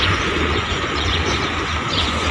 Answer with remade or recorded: remade